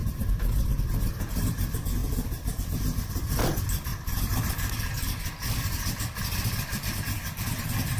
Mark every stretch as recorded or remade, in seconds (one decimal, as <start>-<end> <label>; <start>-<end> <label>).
0.0-8.0 remade